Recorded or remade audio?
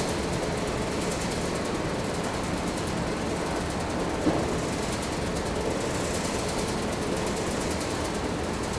recorded